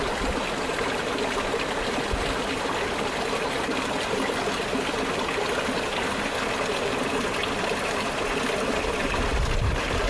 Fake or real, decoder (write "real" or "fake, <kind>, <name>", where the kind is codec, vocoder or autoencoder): real